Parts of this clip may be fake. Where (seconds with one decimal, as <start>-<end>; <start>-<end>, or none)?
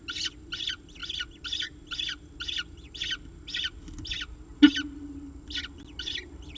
none